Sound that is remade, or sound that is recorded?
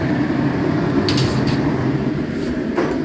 recorded